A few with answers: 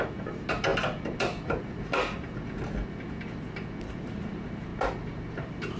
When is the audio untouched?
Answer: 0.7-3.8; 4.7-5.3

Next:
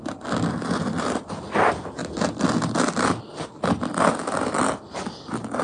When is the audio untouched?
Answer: 0.0-5.6

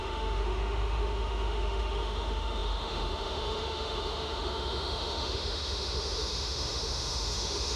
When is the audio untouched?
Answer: none

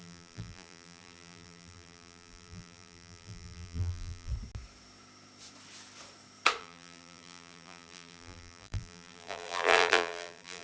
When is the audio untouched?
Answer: 4.3-6.6

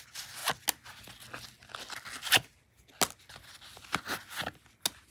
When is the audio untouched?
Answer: 0.0-5.1

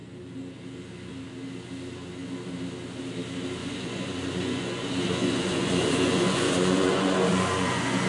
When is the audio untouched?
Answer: 0.0-3.6

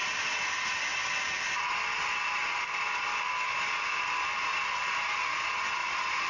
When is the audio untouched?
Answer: 0.0-6.3

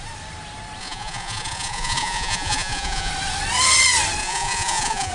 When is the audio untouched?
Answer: 0.0-0.8; 3.1-4.2